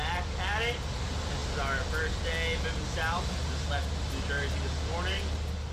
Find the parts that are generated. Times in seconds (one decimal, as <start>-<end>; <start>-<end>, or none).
none

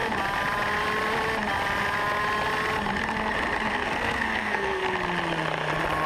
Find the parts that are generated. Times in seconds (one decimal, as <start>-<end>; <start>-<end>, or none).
3.7-4.8

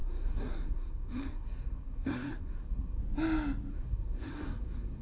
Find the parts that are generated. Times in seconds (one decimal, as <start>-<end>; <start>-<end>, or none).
0.0-3.0; 3.7-5.0

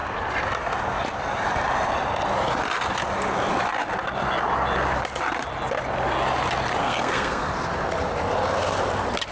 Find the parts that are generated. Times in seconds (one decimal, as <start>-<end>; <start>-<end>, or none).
6.8-7.5

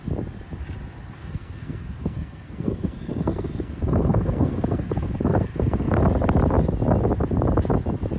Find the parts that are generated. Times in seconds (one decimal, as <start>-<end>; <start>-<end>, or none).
1.2-5.9

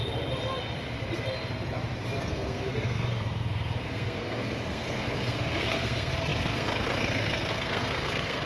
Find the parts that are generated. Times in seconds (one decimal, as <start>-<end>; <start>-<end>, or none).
2.2-8.5